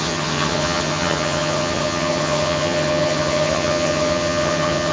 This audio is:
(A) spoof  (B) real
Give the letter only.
A